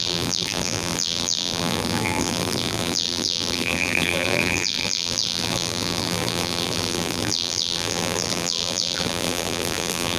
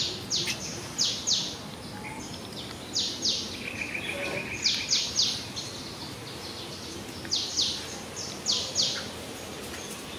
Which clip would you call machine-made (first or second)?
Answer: first